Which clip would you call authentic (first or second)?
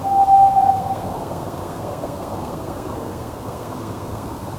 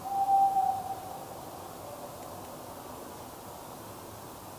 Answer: second